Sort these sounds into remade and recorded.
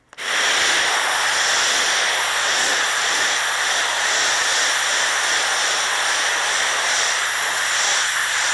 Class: recorded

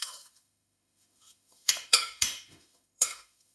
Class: remade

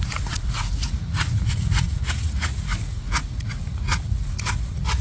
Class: remade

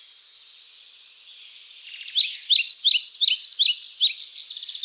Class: recorded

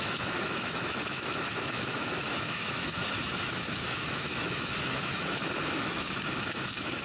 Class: remade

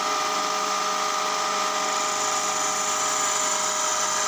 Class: recorded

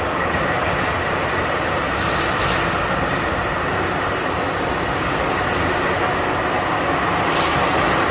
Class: recorded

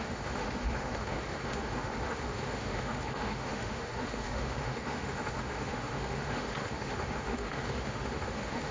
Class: remade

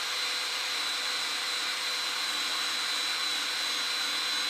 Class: recorded